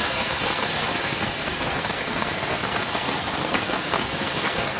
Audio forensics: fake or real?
fake